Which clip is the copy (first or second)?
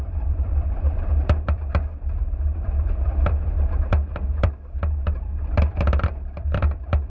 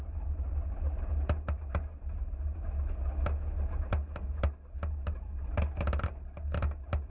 first